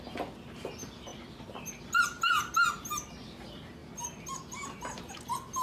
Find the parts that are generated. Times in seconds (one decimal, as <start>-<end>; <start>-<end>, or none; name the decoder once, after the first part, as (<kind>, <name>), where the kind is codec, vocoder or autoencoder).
none